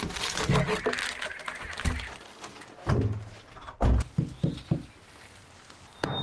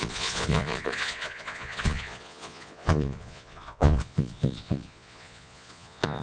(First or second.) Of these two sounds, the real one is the first